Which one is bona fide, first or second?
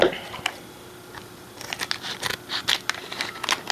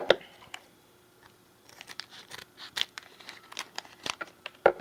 first